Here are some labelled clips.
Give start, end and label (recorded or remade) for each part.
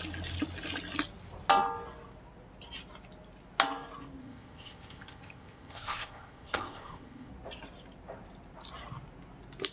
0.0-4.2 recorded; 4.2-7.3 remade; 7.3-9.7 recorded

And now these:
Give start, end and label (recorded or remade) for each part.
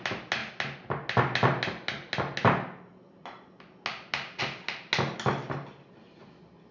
0.0-6.7 recorded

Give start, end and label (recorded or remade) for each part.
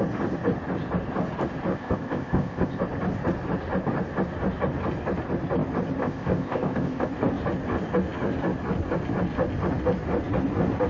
0.0-1.7 recorded; 1.7-2.8 remade; 2.8-6.0 recorded; 6.0-7.1 remade; 7.1-10.9 recorded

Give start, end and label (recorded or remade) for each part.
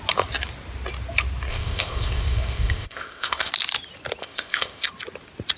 0.0-1.5 recorded; 1.5-3.5 remade; 3.5-4.2 recorded; 4.2-4.9 remade; 4.9-5.6 recorded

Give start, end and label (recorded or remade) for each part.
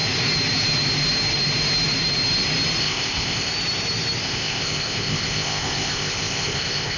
0.0-2.8 recorded; 2.8-3.5 remade; 3.5-4.2 recorded; 4.2-7.0 remade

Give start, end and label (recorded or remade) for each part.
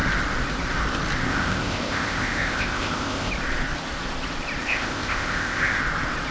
0.0-1.3 recorded; 1.3-3.3 remade; 3.3-4.6 recorded; 4.6-5.8 remade; 5.8-6.3 recorded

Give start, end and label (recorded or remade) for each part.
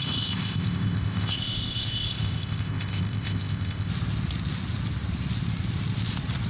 0.0-3.9 remade; 3.9-6.5 recorded